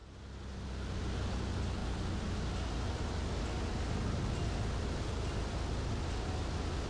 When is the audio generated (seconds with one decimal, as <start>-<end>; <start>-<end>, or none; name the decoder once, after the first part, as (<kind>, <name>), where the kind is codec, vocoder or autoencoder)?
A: none